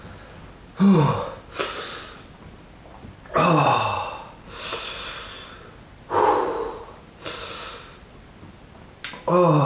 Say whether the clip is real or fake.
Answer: real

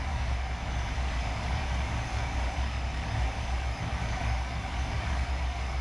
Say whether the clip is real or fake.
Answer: fake